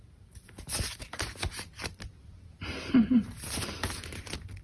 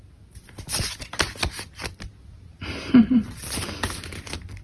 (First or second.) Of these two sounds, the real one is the second